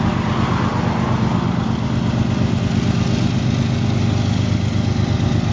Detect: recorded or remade recorded